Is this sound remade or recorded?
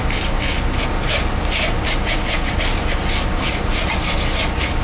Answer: recorded